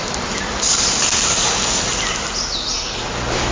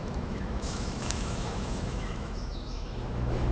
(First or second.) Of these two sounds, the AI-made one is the second